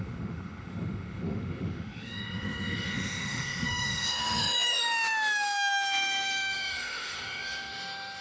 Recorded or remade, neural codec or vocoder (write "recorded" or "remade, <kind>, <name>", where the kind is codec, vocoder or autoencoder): remade, autoencoder, DAC-VAE